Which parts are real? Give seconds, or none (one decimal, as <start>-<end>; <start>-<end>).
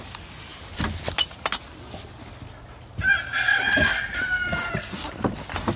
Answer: 0.0-5.8